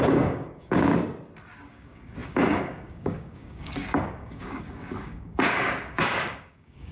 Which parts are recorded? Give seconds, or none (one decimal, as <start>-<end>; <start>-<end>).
1.0-1.6